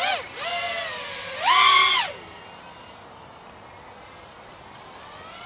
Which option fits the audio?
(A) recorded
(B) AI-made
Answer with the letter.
A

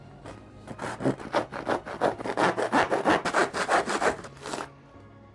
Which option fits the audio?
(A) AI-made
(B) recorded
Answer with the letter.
B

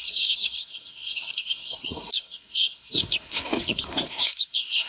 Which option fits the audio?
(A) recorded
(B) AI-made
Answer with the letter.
B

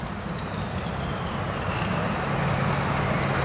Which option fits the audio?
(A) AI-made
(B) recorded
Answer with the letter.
B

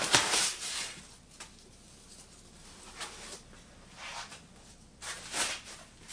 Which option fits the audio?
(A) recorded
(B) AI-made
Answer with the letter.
A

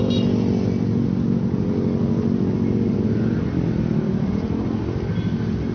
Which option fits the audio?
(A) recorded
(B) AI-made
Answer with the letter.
A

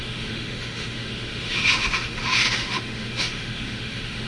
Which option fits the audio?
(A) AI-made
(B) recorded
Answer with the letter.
A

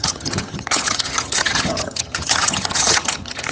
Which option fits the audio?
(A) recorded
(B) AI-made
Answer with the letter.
B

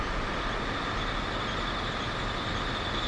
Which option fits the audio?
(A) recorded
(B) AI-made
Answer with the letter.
A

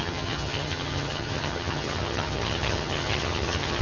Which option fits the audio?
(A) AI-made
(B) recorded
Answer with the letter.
A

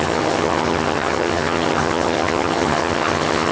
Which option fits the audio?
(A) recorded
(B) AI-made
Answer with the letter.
B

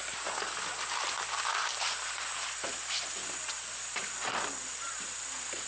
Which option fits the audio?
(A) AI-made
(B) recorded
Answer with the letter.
B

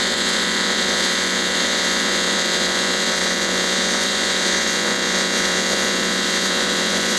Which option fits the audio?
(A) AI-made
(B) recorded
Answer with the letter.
A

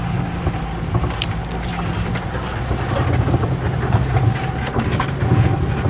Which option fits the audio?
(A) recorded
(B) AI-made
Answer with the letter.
A